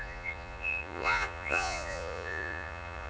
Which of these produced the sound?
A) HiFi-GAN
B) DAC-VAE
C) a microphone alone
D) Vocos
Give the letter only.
D